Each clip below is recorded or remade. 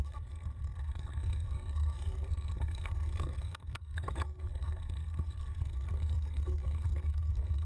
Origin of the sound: remade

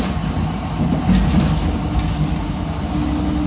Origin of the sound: recorded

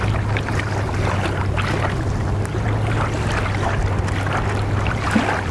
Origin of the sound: recorded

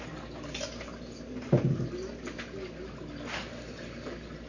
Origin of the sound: recorded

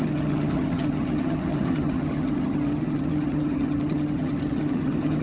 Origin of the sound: remade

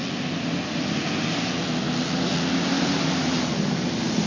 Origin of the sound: recorded